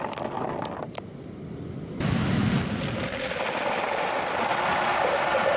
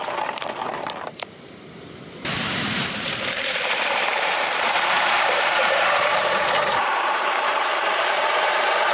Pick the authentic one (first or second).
first